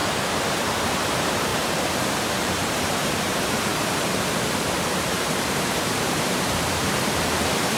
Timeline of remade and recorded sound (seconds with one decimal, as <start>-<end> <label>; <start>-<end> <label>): 0.0-3.7 remade; 3.7-4.4 recorded; 4.4-7.8 remade